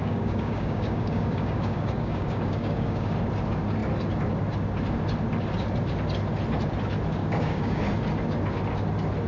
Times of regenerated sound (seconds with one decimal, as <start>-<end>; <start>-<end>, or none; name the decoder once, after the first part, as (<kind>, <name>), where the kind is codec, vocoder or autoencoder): 0.0-3.1 (codec, DAC); 7.2-7.8